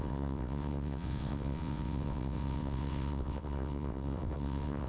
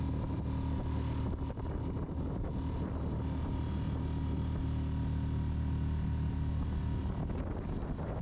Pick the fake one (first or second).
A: first